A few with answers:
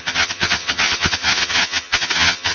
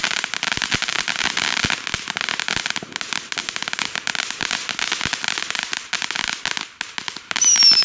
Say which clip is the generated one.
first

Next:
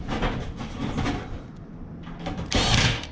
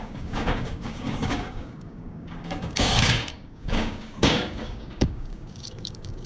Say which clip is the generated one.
second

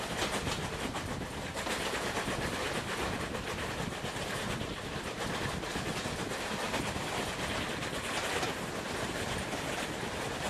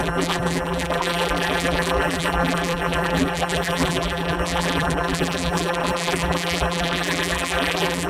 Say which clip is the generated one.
second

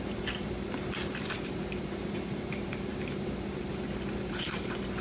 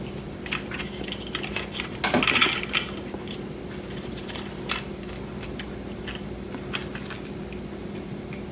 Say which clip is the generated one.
first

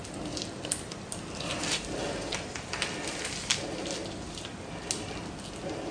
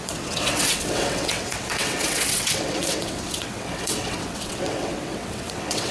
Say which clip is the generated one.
second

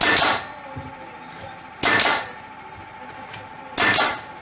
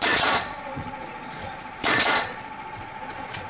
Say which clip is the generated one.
second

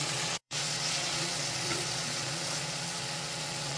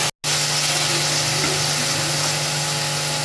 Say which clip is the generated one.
first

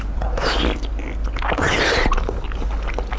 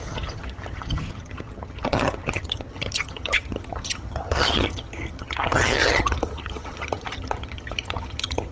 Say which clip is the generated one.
second